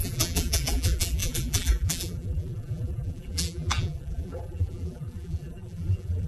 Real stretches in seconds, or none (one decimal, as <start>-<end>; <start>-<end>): none